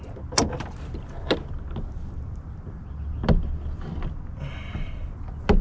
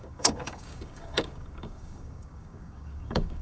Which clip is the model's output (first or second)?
second